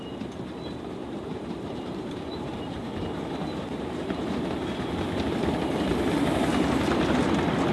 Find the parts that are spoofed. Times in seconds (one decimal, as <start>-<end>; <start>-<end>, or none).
1.0-4.4